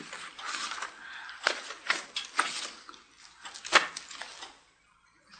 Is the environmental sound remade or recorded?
recorded